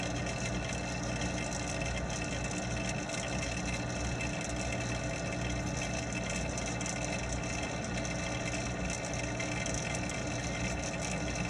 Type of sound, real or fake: real